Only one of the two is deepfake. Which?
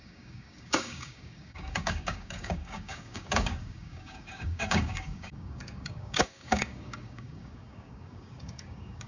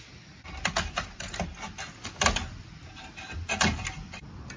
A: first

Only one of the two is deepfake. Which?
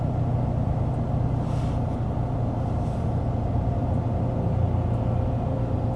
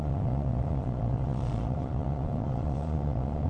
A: second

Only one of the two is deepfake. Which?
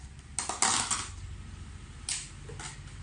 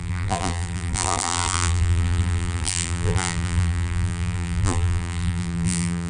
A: second